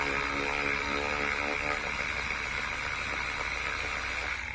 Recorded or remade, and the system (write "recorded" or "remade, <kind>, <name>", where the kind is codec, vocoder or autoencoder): recorded